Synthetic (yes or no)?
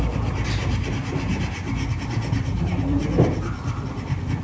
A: no